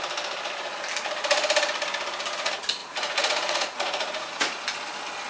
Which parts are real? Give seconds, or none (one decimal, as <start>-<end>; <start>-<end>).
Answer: 0.0-2.8; 4.6-5.3